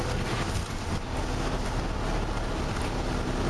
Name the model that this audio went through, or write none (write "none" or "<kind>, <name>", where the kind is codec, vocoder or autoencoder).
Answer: none